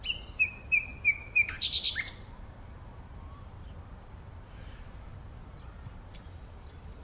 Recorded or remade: remade